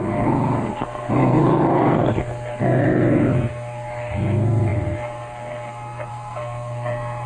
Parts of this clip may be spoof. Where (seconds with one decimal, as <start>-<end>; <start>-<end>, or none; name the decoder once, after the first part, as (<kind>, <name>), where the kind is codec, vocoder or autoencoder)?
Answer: 0.0-7.3 (codec, SNAC)